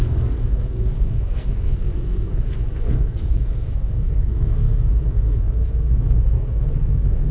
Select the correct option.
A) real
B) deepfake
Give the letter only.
B